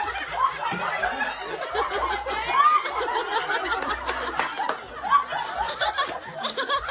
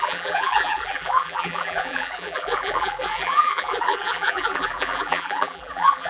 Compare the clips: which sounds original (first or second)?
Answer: first